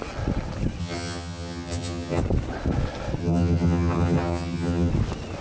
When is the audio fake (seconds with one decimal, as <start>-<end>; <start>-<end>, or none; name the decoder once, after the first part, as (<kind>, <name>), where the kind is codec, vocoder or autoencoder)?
0.8-2.2 (vocoder, HiFi-GAN); 3.2-4.9

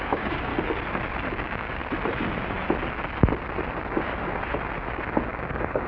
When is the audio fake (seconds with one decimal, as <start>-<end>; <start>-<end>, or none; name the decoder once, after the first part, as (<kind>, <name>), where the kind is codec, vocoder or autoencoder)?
0.0-0.5 (codec, DAC); 1.3-1.8; 5.3-5.9

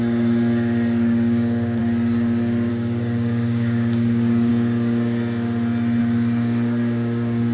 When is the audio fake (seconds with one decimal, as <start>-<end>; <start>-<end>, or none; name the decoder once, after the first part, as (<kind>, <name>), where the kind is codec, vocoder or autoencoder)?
0.0-1.8 (codec, DAC); 2.7-4.5; 6.0-7.5